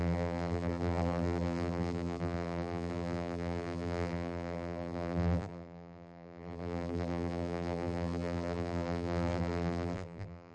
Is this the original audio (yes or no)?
no